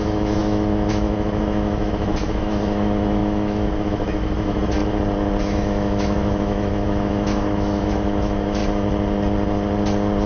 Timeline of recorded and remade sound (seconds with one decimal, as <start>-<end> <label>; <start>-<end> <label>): 0.0-4.8 remade; 4.8-5.4 recorded; 5.4-8.6 remade; 8.6-10.3 recorded

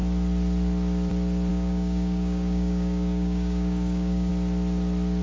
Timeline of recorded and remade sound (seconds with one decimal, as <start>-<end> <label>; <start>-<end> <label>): 0.0-1.5 recorded; 1.5-4.3 remade; 4.3-5.2 recorded

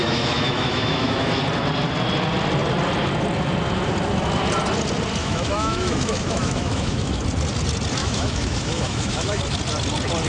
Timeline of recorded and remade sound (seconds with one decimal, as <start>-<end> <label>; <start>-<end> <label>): 0.0-1.4 remade; 1.4-5.2 recorded; 5.2-7.2 remade; 7.2-8.0 recorded; 8.0-9.4 remade; 9.4-10.3 recorded

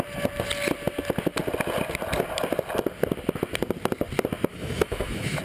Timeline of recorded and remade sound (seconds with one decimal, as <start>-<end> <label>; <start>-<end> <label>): 0.0-4.5 recorded; 4.5-5.4 remade

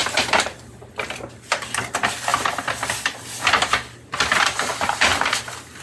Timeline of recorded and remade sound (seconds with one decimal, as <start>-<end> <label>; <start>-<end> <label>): 0.0-0.9 remade; 0.9-5.8 recorded